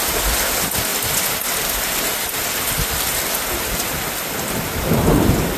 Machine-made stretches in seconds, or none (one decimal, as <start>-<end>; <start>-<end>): none